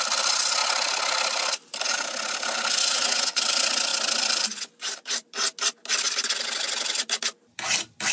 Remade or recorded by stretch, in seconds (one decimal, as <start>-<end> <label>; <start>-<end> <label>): 0.0-2.8 recorded; 2.8-3.4 remade; 3.4-8.1 recorded

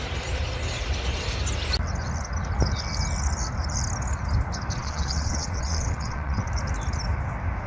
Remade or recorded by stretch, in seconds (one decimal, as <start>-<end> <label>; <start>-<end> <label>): 0.0-4.8 recorded; 4.8-6.5 remade; 6.5-7.7 recorded